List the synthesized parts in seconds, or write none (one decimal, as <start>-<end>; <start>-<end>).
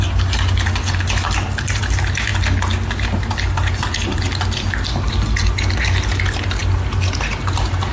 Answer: none